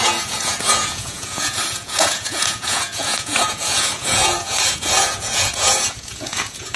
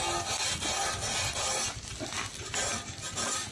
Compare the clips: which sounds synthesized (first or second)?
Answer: first